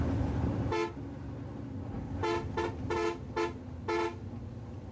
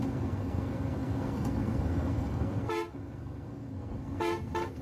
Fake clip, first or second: second